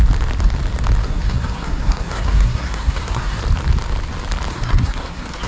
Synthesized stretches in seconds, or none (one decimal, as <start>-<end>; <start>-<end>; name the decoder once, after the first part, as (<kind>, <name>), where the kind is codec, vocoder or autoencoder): 1.0-3.4 (codec, SNAC); 4.5-5.5